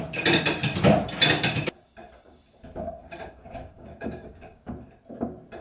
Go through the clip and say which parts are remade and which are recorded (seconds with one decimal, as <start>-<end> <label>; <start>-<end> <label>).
0.0-3.0 recorded; 3.0-4.7 remade; 4.7-5.6 recorded